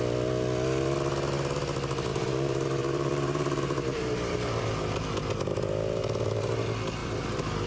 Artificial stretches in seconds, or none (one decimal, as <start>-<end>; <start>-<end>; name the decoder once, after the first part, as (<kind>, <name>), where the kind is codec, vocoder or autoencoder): 2.1-4.7 (vocoder, BigVGAN v2); 5.5-6.5; 7.0-7.7